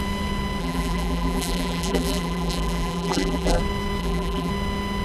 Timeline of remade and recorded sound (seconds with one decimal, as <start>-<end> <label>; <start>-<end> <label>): 0.0-0.6 recorded; 0.6-3.6 remade; 3.6-4.0 recorded; 4.0-4.5 remade; 4.5-5.0 recorded